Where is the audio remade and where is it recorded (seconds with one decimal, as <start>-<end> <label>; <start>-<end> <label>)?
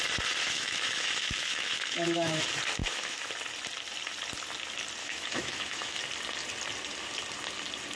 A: 0.0-0.4 recorded; 0.4-2.4 remade; 2.4-2.8 recorded; 2.8-3.3 remade; 3.3-5.0 recorded; 5.0-6.0 remade; 6.0-8.0 recorded